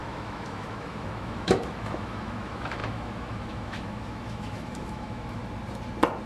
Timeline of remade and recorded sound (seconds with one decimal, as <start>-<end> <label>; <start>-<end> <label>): 0.0-5.4 remade; 5.4-6.3 recorded